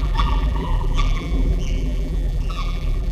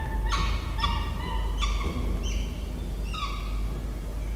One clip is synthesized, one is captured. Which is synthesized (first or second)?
first